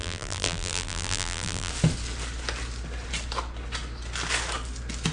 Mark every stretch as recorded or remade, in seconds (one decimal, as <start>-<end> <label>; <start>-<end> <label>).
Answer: 0.0-1.7 remade; 1.7-5.1 recorded